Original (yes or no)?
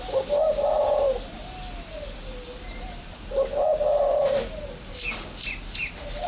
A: yes